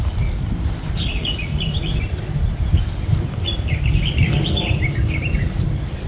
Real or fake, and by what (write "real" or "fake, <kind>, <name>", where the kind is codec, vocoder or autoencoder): fake, vocoder, BigVGAN v2